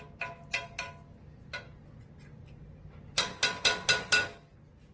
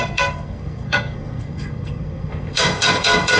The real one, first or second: first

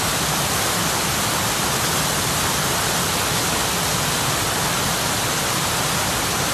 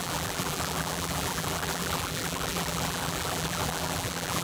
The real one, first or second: first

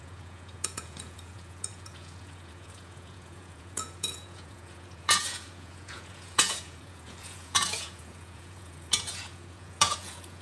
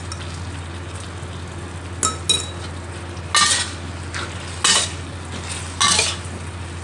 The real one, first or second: second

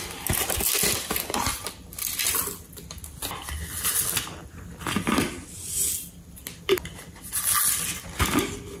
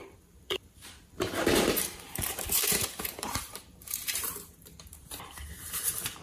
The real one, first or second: first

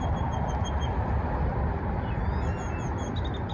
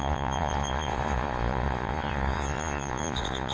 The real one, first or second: first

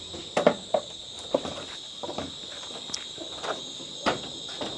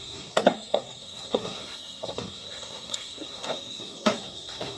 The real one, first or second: first